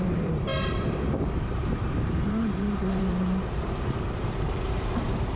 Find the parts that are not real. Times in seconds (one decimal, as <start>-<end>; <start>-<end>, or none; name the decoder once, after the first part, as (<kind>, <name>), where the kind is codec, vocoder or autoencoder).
0.0-5.4 (vocoder, BigVGAN v2)